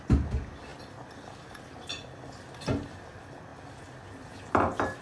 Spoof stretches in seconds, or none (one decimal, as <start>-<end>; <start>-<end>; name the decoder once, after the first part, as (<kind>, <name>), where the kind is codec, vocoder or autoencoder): none